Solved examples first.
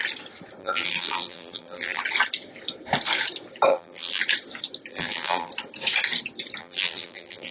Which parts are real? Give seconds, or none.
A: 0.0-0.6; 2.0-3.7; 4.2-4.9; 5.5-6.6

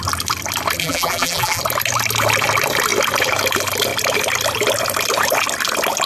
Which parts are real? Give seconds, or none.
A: 0.0-0.8; 1.6-6.1

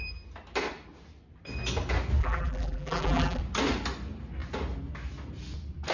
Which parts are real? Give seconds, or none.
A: 0.0-2.2; 3.4-5.9

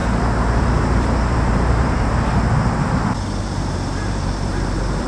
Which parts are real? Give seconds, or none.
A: 0.0-0.6; 2.3-3.4

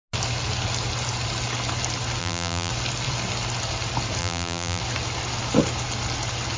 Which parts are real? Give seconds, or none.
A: 0.0-2.2; 2.7-4.2; 4.8-6.6